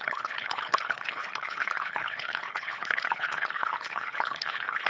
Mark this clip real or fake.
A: fake